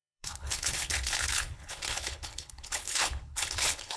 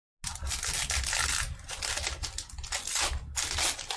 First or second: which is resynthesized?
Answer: first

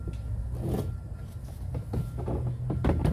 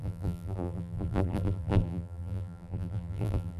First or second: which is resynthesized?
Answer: second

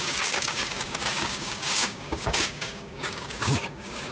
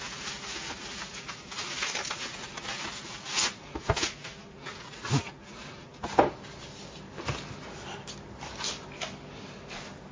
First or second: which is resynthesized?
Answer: first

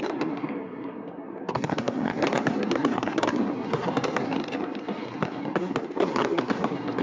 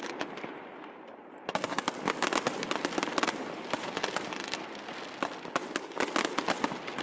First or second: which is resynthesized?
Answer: first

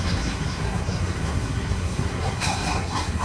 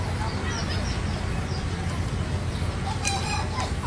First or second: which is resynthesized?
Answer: first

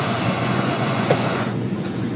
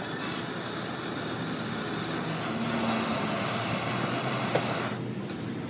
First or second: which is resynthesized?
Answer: first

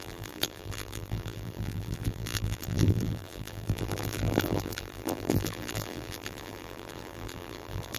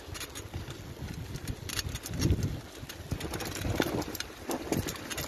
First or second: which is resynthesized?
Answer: first